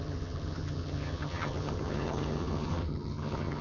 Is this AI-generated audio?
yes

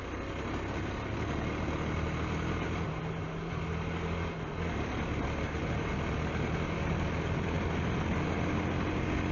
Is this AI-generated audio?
no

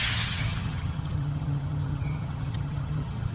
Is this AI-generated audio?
yes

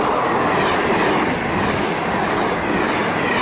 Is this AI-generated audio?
no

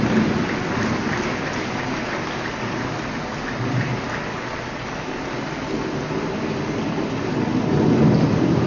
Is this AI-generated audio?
no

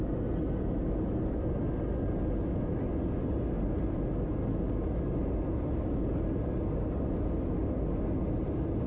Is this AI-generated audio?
no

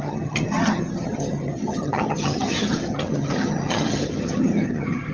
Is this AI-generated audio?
yes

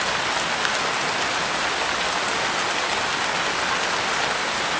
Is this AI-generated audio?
no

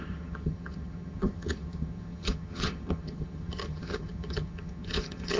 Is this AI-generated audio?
yes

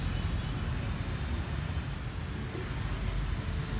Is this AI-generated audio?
no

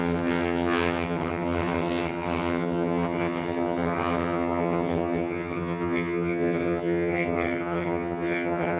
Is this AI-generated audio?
yes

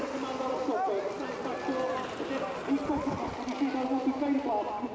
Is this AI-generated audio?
no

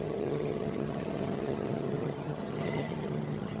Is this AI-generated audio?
yes